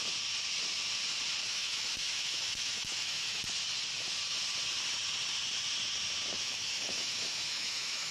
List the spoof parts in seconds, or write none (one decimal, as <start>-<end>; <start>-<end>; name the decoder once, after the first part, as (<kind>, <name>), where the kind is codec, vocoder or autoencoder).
1.4-3.4 (autoencoder, DAC-VAE); 6.4-8.1